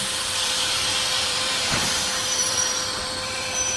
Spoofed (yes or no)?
yes